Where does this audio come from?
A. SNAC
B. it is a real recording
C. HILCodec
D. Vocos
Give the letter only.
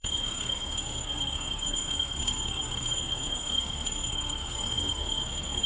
A